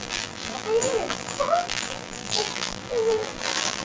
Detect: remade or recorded remade